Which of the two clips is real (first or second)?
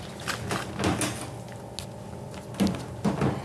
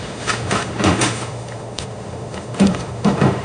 first